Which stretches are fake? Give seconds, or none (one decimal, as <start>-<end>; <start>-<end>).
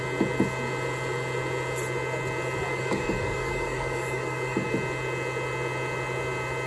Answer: 2.7-4.7